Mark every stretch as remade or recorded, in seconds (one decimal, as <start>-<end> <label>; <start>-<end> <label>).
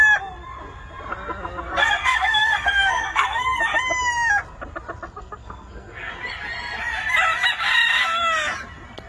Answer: 0.0-1.8 recorded; 1.8-3.6 remade; 3.6-5.2 recorded; 5.2-6.1 remade; 6.1-9.1 recorded